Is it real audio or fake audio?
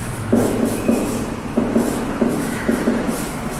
fake